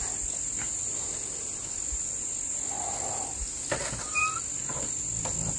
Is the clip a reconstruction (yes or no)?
no